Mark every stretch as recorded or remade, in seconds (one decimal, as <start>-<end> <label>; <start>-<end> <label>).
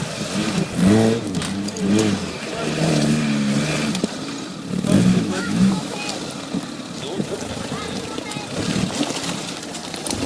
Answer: 0.0-5.1 recorded; 5.1-6.0 remade; 6.0-10.3 recorded